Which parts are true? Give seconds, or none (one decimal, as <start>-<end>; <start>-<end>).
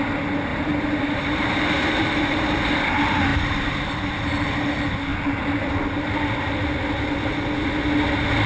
0.0-0.5; 2.6-8.5